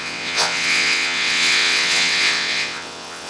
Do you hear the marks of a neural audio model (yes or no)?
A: yes